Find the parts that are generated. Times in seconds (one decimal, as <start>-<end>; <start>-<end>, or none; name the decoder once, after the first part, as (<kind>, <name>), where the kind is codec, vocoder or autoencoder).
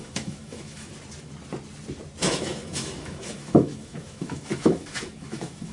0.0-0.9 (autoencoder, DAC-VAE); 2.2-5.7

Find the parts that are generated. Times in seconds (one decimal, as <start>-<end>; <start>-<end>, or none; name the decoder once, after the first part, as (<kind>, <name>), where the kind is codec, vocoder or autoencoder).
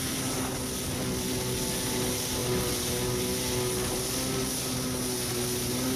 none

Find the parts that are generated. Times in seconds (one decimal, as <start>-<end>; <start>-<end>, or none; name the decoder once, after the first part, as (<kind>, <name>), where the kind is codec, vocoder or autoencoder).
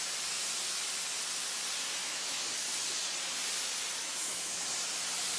2.0-2.5 (autoencoder, DAC-VAE); 4.0-4.6